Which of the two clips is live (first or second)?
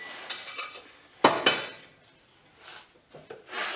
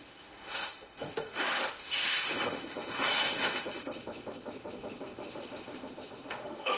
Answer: first